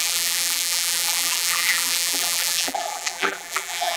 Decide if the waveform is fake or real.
fake